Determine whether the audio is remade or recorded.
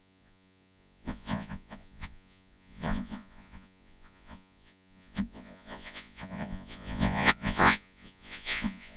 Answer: remade